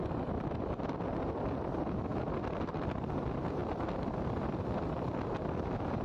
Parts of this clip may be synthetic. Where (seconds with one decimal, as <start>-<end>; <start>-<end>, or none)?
0.0-2.1; 2.8-3.6; 5.3-6.0